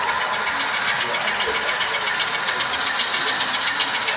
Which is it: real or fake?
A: real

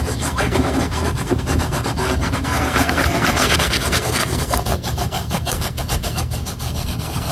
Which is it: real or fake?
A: fake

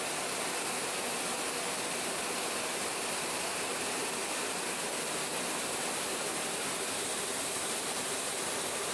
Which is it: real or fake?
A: real